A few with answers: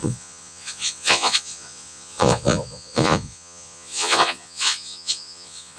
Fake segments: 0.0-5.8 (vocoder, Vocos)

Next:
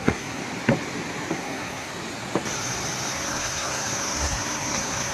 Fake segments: 0.0-0.4 (codec, SNAC); 1.3-1.9; 3.1-5.1